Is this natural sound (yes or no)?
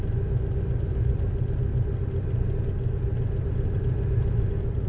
yes